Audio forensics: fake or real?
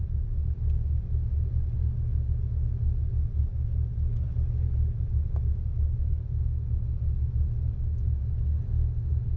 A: real